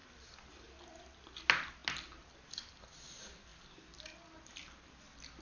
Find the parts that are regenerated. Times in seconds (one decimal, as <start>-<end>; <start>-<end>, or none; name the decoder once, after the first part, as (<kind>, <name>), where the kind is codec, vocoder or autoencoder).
none